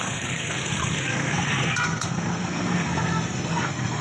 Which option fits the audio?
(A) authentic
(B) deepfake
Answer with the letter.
B